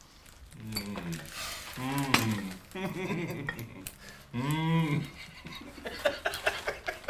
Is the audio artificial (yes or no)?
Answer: no